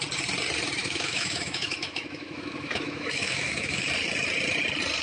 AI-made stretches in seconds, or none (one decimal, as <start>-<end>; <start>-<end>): 0.8-3.8